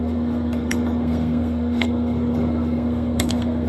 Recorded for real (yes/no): no